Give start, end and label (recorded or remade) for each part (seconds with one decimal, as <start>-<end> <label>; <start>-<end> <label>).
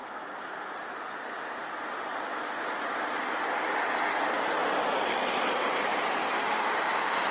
0.0-7.3 recorded